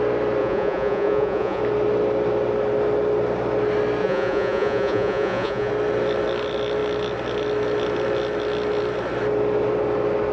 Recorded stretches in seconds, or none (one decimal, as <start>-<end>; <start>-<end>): 0.0-0.4; 1.6-4.0; 5.7-10.3